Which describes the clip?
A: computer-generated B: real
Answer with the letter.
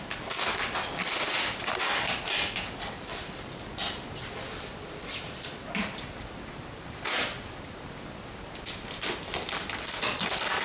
B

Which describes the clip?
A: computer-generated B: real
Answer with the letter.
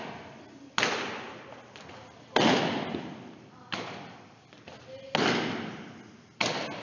B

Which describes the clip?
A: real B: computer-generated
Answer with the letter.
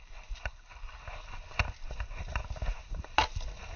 A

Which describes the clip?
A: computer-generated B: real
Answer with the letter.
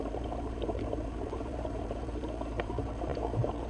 A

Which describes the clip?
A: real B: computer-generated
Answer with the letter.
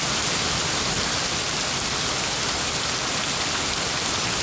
A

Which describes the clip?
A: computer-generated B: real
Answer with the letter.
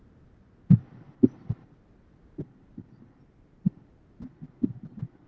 B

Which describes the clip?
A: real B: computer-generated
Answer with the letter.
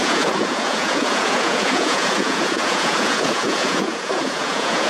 B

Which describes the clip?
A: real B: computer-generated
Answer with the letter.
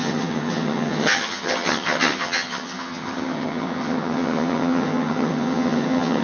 B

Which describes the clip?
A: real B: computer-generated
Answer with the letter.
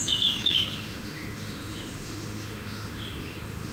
B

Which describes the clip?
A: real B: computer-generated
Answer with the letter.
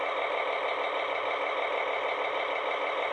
A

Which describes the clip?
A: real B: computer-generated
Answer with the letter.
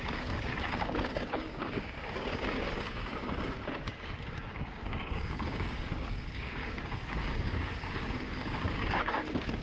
B